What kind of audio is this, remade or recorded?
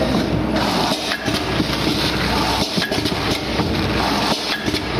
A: recorded